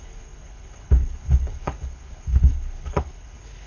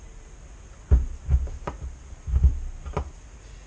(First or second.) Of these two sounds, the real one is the second